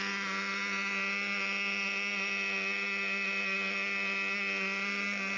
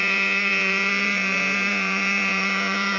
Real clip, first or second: first